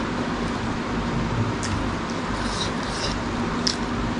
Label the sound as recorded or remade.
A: recorded